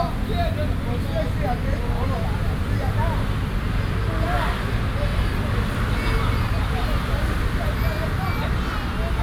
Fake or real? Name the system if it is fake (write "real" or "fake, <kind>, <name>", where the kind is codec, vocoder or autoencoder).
real